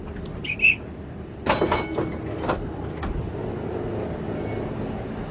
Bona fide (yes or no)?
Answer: yes